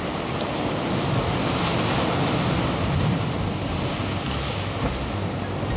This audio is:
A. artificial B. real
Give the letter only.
B